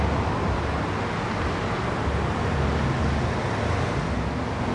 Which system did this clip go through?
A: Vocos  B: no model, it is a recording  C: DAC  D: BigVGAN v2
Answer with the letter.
B